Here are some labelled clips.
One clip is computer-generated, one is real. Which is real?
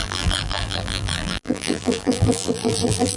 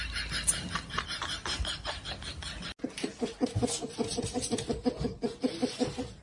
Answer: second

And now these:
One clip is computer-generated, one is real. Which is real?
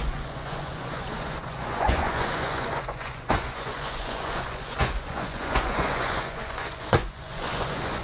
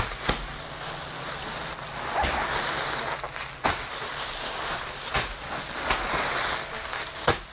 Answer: second